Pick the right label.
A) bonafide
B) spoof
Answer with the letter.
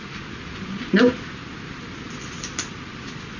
A